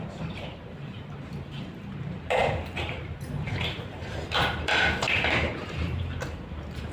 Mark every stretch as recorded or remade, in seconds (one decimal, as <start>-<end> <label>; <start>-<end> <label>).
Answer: 0.0-6.9 remade